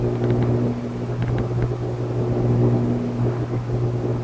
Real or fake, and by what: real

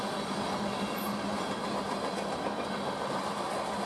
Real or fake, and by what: real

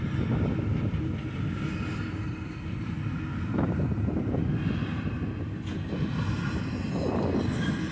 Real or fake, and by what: real